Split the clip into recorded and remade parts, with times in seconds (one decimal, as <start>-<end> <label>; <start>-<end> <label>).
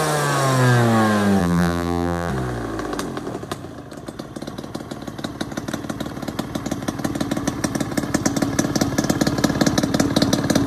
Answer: 0.0-1.4 recorded; 1.4-2.3 remade; 2.3-10.7 recorded